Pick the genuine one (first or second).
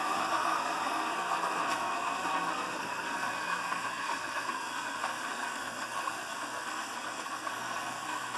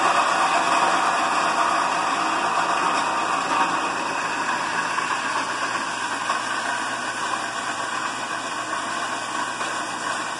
second